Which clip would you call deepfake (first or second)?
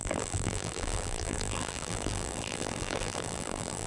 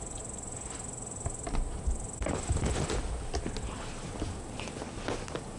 first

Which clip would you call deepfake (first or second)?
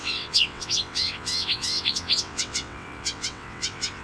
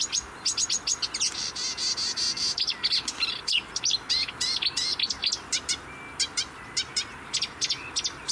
first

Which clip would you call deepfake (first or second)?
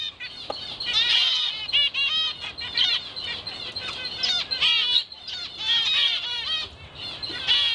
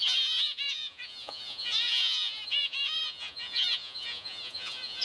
second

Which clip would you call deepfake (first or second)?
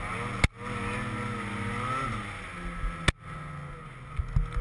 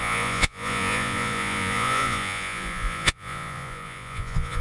second